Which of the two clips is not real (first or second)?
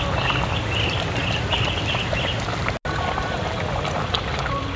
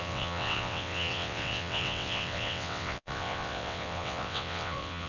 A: second